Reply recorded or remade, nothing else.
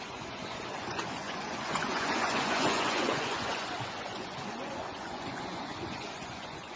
remade